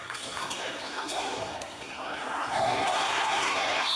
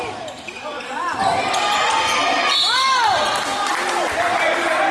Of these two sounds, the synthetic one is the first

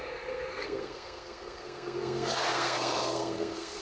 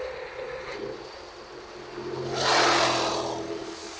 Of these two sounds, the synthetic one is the first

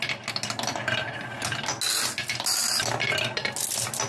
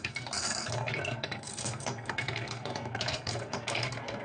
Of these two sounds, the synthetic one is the second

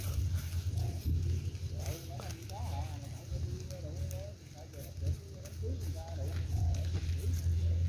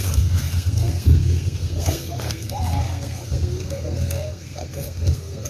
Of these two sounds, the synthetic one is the second